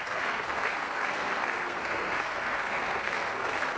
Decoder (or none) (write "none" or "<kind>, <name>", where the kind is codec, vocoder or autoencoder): codec, SNAC